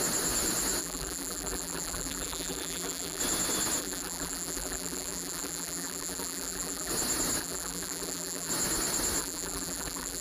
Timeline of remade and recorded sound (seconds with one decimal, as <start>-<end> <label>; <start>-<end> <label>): 0.0-0.8 recorded; 0.8-3.2 remade; 3.2-3.8 recorded; 3.8-6.9 remade; 6.9-7.4 recorded; 7.4-8.5 remade; 8.5-9.2 recorded; 9.2-10.2 remade